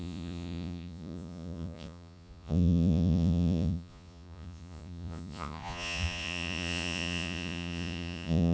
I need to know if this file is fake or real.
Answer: fake